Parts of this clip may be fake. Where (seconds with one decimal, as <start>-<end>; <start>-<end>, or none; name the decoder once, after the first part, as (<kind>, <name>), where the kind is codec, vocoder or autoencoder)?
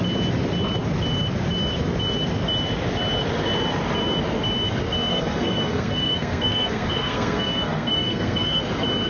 5.1-8.6 (codec, SNAC)